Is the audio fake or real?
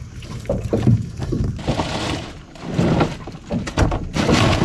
real